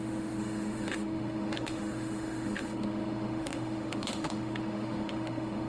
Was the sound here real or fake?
fake